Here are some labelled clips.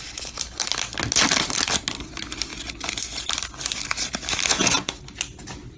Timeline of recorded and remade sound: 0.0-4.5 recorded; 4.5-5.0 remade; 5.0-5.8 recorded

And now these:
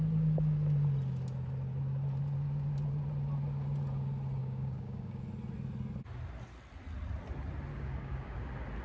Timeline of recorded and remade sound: 0.0-4.4 recorded; 4.4-5.2 remade; 5.2-7.7 recorded; 7.7-8.4 remade; 8.4-8.8 recorded

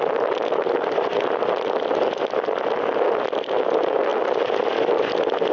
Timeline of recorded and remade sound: 0.0-5.5 recorded

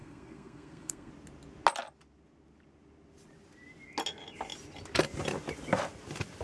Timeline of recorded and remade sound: 0.0-1.1 remade; 1.1-6.4 recorded

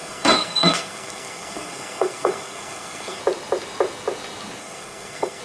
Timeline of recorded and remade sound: 0.0-3.2 remade; 3.2-4.6 recorded; 4.6-5.4 remade

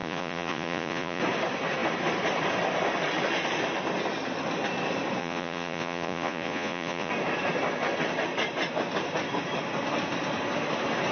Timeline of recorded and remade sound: 0.0-1.2 remade; 1.2-5.2 recorded; 5.2-7.1 remade; 7.1-11.1 recorded

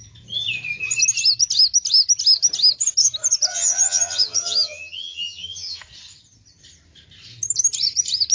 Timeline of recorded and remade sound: 0.0-3.5 recorded; 3.5-5.8 remade; 5.8-8.3 recorded

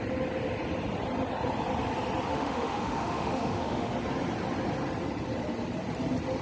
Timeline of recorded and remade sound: 0.0-2.3 recorded; 2.3-3.9 remade; 3.9-6.4 recorded